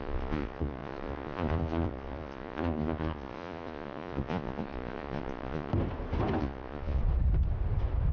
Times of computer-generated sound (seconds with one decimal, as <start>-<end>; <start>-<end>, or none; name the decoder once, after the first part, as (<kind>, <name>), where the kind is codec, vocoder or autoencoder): 0.0-5.7 (vocoder, Vocos); 6.4-7.0